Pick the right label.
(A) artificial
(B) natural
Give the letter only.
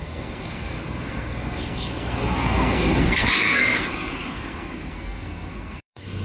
A